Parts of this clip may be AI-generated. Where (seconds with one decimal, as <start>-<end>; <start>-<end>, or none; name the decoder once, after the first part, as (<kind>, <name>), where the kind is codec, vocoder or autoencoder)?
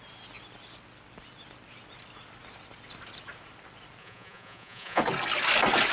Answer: 4.0-5.0 (vocoder, Vocos)